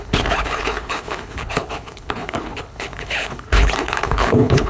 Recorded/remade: remade